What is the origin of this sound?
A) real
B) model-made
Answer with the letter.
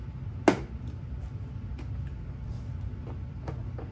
A